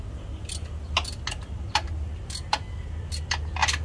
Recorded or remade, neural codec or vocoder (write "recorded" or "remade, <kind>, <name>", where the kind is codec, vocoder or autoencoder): recorded